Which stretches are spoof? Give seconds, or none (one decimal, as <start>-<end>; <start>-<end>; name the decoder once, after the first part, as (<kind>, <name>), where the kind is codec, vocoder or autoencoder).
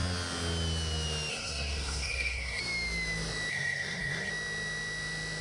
1.3-2.6 (codec, SNAC); 3.5-4.3